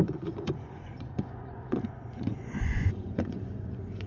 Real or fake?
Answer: fake